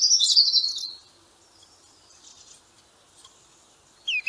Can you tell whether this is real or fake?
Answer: real